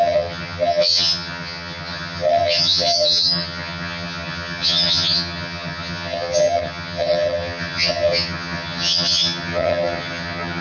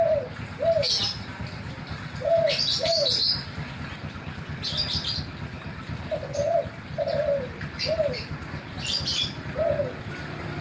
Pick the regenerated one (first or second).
first